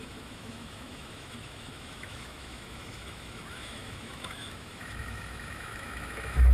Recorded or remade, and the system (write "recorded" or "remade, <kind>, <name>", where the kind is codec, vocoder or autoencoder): remade, autoencoder, DAC-VAE